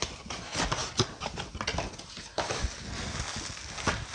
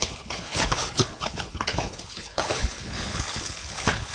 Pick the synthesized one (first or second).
second